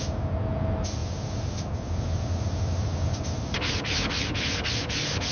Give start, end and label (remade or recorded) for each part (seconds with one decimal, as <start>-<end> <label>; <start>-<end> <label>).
0.0-5.3 recorded